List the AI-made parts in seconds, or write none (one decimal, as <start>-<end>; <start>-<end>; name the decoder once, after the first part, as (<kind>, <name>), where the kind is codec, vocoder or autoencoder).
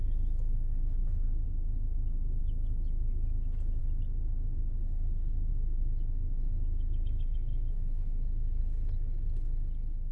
1.0-2.4 (autoencoder, DAC-VAE); 7.5-8.6